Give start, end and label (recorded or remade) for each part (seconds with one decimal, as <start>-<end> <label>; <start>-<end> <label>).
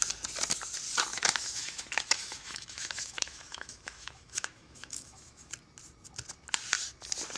0.0-1.1 recorded; 1.1-5.5 remade; 5.5-7.4 recorded